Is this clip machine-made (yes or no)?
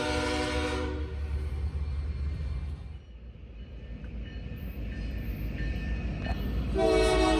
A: no